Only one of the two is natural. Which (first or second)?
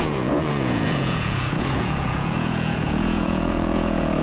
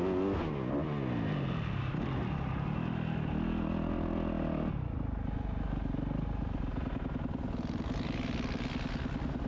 second